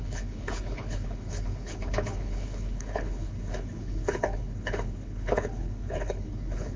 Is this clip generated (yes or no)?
yes